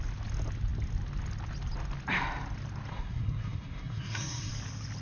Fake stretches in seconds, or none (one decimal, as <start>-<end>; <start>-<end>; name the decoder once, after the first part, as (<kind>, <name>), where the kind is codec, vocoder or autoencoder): 2.9-4.5 (codec, SNAC)